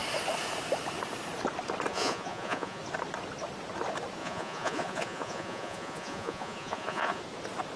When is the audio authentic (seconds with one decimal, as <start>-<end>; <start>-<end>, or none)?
0.0-1.9; 2.8-4.2; 7.2-7.8